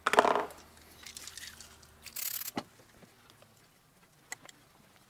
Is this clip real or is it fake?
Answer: real